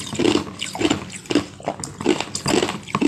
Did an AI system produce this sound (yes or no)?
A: no